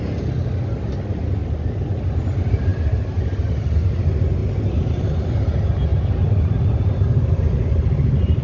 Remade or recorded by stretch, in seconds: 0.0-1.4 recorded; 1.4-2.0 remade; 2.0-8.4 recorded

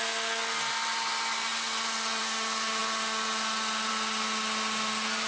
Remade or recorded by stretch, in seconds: 0.0-5.3 recorded

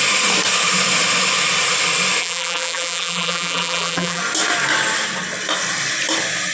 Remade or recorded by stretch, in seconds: 0.0-2.2 recorded; 2.2-4.2 remade; 4.2-6.5 recorded